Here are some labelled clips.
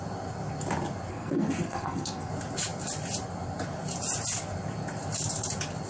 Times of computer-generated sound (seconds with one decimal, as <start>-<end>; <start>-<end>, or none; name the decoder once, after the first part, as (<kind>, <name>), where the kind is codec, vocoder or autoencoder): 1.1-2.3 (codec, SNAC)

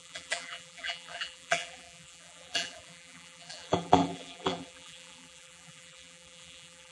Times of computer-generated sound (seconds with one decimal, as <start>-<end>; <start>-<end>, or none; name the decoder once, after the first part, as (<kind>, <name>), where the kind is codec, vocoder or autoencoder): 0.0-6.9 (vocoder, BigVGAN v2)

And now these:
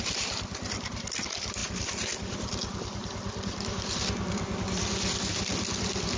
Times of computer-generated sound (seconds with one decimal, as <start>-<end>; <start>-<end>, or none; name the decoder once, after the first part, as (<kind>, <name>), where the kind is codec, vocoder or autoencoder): none

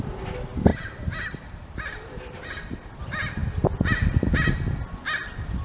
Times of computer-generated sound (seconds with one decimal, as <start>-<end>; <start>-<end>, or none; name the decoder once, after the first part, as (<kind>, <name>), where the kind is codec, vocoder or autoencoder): 0.7-3.0 (vocoder, BigVGAN v2)